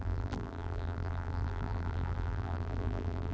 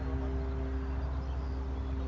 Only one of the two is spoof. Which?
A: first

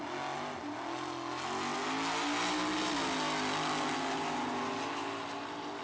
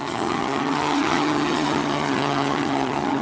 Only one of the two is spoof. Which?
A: second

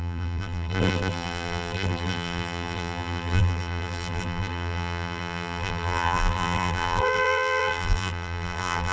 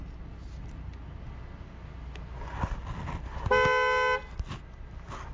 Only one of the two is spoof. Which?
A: first